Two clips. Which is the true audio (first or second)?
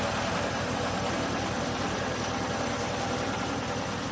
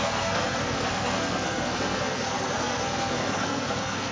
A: first